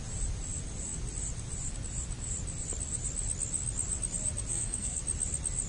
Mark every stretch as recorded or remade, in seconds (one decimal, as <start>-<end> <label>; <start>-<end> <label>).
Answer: 0.0-4.5 recorded; 4.5-5.0 remade; 5.0-5.7 recorded